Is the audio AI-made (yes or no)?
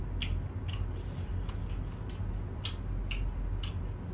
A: no